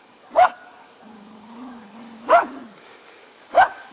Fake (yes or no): yes